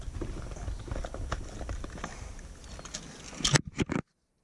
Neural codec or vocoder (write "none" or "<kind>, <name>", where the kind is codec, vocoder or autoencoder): none